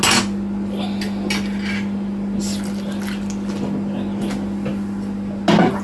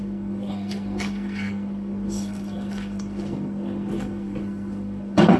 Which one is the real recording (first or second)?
first